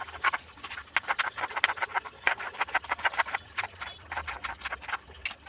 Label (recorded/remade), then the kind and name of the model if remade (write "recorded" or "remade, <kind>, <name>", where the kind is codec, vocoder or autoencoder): recorded